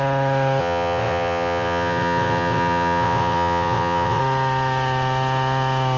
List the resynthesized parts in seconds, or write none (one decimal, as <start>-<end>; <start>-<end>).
0.6-4.2